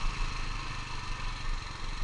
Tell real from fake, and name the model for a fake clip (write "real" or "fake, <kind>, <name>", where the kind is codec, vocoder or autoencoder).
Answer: real